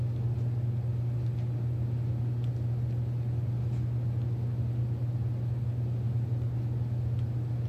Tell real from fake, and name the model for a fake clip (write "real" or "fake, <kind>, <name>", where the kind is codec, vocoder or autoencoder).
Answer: real